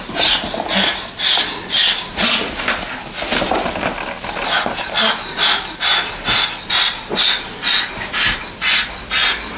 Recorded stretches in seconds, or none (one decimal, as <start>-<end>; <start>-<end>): 0.0-9.6